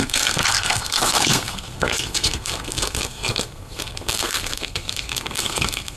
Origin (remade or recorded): remade